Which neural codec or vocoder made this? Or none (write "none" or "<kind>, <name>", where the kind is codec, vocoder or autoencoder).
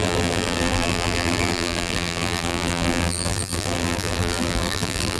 vocoder, BigVGAN v2